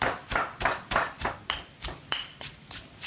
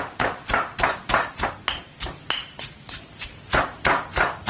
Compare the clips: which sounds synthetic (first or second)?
first